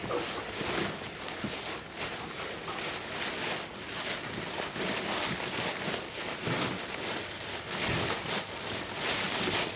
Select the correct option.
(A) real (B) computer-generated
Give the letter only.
A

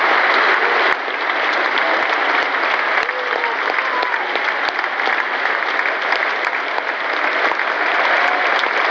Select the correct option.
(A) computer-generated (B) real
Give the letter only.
B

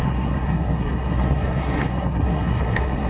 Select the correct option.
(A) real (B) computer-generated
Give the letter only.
B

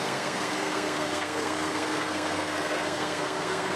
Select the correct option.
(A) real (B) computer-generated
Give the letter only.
B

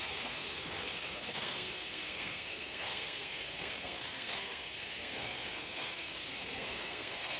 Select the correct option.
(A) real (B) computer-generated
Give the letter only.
B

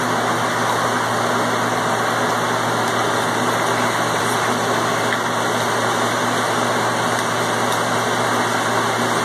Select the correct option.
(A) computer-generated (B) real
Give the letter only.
B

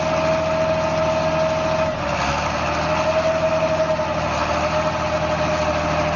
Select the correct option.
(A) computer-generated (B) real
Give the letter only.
B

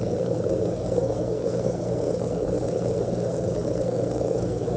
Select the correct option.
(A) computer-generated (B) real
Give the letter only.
A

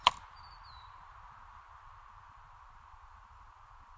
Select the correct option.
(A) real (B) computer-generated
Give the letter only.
A